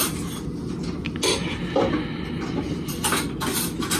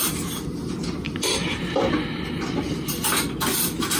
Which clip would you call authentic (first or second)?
first